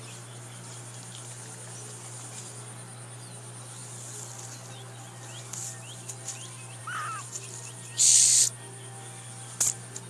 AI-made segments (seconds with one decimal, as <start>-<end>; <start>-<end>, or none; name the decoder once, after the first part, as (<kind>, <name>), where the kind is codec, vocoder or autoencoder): none